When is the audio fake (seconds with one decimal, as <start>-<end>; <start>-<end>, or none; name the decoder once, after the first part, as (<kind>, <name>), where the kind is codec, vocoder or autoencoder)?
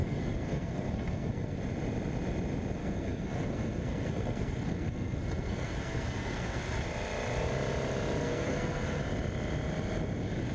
0.0-1.6 (codec, SNAC); 2.8-6.6; 8.2-9.0